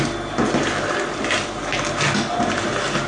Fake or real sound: real